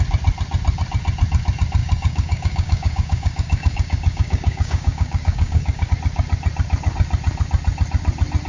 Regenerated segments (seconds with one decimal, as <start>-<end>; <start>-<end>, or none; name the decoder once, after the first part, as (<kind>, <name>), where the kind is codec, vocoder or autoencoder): 1.8-5.9 (codec, DAC)